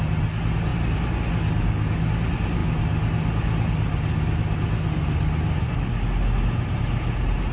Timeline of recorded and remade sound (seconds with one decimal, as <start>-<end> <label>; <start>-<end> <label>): 0.0-7.5 recorded